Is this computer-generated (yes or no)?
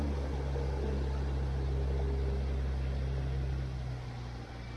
no